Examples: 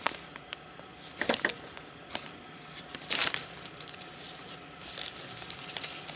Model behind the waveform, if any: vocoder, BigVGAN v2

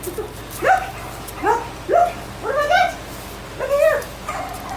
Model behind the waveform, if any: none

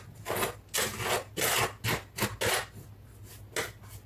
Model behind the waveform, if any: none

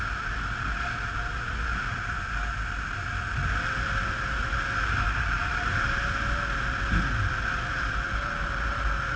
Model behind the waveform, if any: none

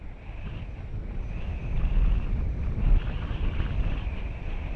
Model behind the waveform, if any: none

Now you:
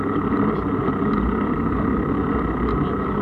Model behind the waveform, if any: none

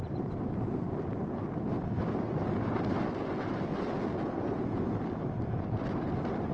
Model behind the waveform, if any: none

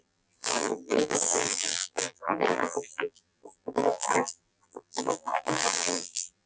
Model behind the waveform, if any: vocoder, BigVGAN v2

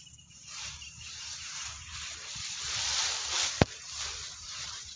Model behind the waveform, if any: vocoder, BigVGAN v2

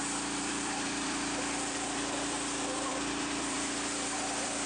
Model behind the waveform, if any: vocoder, BigVGAN v2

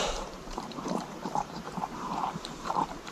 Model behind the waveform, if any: vocoder, BigVGAN v2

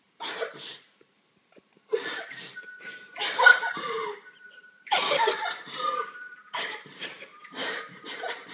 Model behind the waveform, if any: vocoder, BigVGAN v2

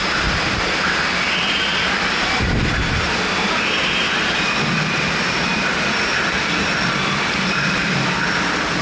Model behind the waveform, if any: vocoder, BigVGAN v2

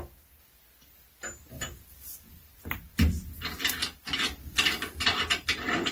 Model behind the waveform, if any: none